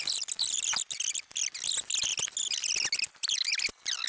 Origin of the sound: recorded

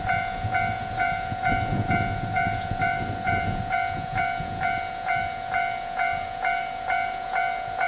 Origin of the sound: remade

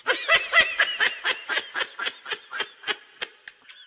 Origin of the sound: recorded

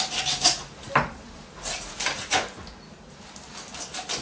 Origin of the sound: recorded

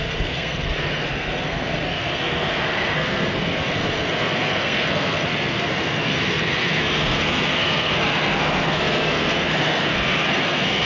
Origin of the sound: remade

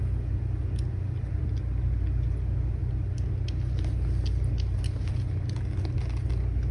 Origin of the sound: recorded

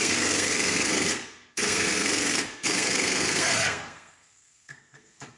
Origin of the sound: remade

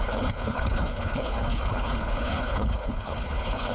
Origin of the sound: remade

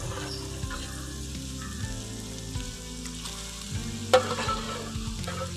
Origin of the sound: recorded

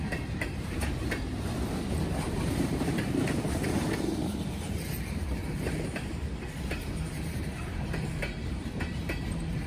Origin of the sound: remade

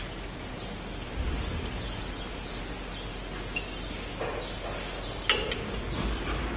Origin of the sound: recorded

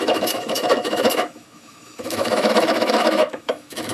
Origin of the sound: remade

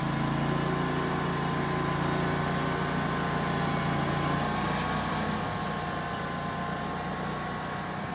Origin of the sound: recorded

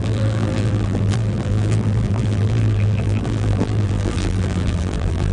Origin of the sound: remade